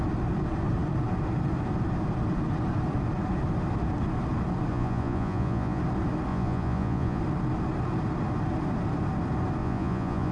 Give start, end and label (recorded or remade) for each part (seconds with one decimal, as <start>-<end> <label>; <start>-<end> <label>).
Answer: 0.0-4.7 recorded; 4.7-5.8 remade; 5.8-6.3 recorded; 6.3-7.2 remade; 7.2-9.6 recorded; 9.6-10.3 remade